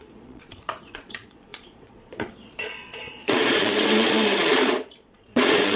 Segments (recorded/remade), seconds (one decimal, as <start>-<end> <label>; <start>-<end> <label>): 0.0-5.8 remade